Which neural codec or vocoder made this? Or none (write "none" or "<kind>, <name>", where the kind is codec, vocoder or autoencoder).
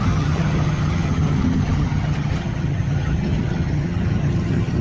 vocoder, HiFi-GAN